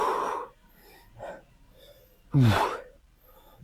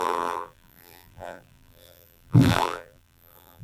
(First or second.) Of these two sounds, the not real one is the second